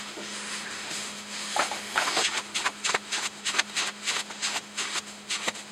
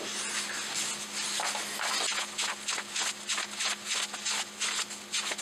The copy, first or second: first